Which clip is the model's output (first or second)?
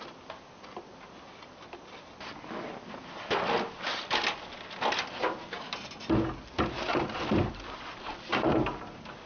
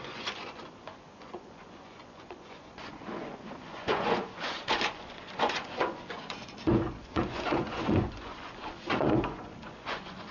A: second